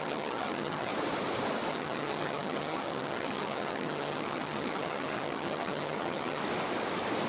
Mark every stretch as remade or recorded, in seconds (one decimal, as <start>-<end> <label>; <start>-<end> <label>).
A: 0.0-0.9 remade; 0.9-1.7 recorded; 1.7-6.4 remade; 6.4-7.3 recorded

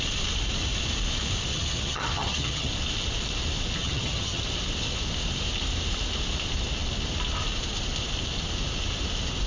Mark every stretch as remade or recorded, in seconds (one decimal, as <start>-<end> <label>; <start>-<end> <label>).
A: 0.0-1.5 recorded; 1.5-2.7 remade; 2.7-3.8 recorded; 3.8-4.4 remade; 4.4-9.5 recorded

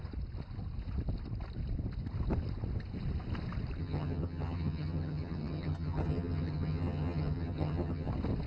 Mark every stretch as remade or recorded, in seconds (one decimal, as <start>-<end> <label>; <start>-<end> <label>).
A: 0.0-3.8 recorded; 3.8-8.1 remade; 8.1-8.5 recorded